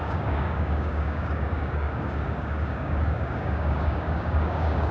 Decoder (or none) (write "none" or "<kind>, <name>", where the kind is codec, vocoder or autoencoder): codec, DAC